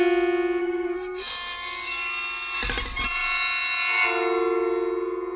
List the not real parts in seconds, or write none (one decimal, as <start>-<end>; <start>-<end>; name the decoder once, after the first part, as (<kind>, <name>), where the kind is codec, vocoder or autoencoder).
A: 0.6-1.2 (codec, SNAC)